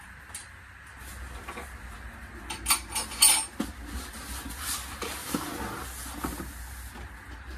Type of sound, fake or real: real